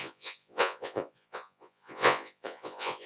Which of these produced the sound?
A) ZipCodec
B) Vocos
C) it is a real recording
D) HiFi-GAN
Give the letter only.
B